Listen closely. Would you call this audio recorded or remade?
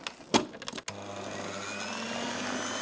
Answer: recorded